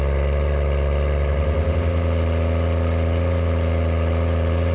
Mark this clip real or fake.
real